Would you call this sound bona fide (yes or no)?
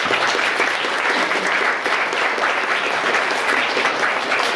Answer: yes